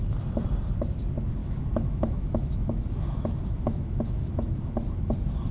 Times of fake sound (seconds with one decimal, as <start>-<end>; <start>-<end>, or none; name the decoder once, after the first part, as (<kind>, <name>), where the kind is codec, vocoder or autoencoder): 1.4-4.7 (autoencoder, DAC-VAE)

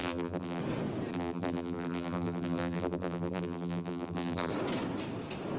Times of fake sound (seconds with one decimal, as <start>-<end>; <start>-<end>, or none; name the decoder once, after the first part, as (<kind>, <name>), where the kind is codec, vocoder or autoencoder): 0.0-0.6 (vocoder, BigVGAN v2); 1.1-4.5

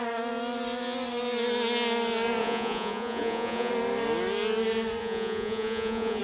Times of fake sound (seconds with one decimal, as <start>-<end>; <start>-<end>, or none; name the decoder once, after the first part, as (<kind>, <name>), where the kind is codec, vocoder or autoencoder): 2.4-3.7 (vocoder, Vocos); 5.0-6.2

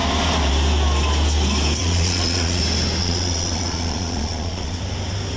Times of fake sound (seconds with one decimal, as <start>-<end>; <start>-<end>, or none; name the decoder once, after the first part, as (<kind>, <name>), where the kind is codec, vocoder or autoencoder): 1.8-2.6 (vocoder, Vocos); 3.0-4.8

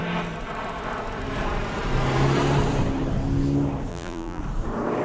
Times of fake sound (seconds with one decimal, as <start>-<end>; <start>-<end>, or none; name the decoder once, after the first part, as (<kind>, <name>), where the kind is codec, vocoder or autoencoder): 3.9-4.4 (vocoder, BigVGAN v2)

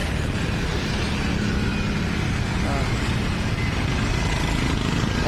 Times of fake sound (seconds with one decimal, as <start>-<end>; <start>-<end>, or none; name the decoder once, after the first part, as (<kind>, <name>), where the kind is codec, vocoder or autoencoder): none

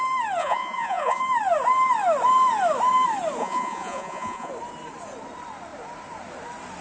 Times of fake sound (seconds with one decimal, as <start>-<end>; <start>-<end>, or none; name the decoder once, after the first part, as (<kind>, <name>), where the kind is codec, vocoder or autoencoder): 0.4-1.2 (vocoder, Vocos); 3.4-4.5

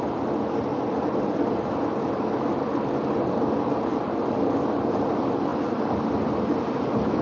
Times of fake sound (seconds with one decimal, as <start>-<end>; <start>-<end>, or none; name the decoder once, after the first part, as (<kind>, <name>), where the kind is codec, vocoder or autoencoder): none